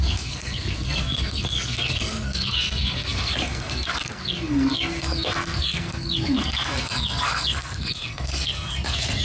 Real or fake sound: fake